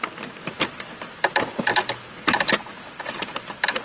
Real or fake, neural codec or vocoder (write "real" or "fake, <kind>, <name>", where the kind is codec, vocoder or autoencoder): real